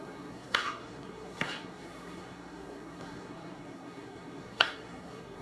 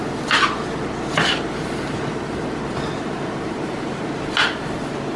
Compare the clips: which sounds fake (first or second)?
first